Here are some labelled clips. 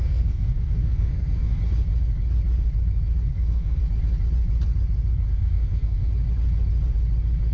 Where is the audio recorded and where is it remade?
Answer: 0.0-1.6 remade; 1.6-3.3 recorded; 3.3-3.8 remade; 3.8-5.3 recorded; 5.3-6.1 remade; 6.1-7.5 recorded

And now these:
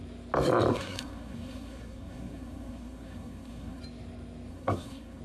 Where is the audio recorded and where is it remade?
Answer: 0.0-0.7 recorded; 0.7-3.8 remade; 3.8-4.5 recorded; 4.5-5.2 remade

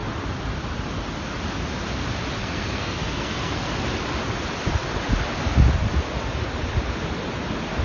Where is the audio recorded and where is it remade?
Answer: 0.0-2.4 recorded; 2.4-3.7 remade; 3.7-7.8 recorded

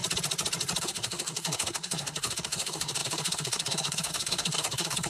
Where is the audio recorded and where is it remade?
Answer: 0.0-0.8 recorded; 0.8-5.1 remade

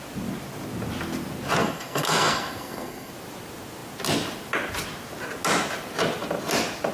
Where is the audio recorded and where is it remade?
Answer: 0.0-1.6 recorded; 1.6-3.1 remade; 3.1-6.9 recorded

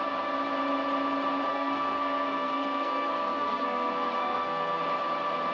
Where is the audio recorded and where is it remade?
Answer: 0.0-1.5 recorded; 1.5-4.8 remade; 4.8-5.5 recorded